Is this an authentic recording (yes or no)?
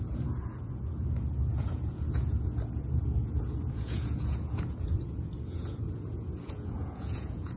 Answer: no